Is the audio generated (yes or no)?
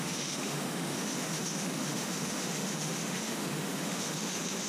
yes